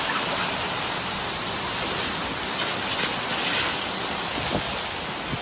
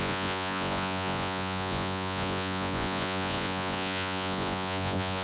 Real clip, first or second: first